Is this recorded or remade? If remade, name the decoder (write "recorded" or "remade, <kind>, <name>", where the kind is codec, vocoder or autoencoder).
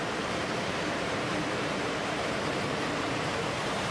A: remade, vocoder, BigVGAN v2